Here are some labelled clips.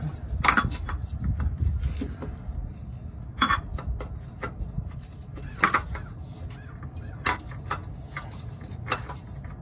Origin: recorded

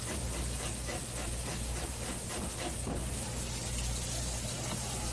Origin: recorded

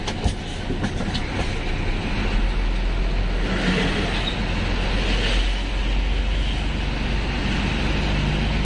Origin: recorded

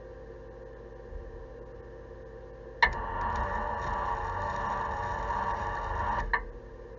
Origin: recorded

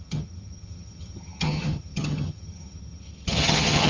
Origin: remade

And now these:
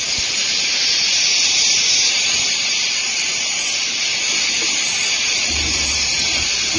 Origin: remade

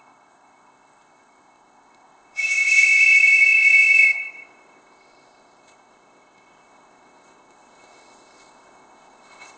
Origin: remade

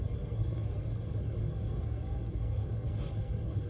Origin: remade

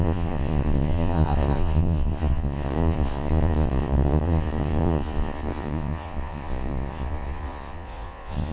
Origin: remade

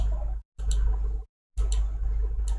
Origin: recorded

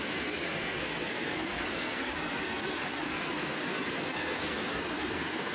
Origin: remade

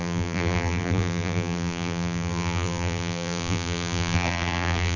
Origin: remade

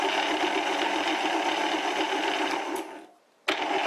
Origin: recorded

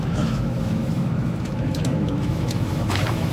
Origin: remade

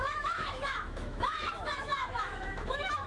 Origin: remade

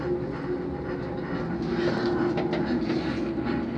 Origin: recorded